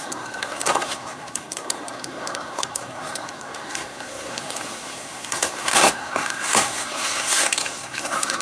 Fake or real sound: fake